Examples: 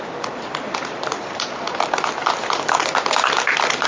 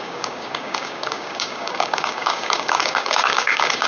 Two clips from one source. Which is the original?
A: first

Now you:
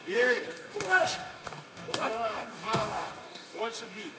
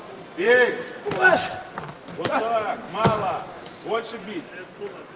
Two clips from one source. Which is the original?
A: second